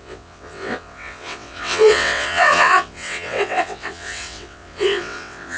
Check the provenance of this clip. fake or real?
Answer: fake